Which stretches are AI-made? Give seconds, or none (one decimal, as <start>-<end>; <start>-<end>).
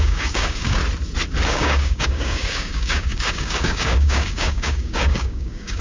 0.0-0.8; 1.5-5.8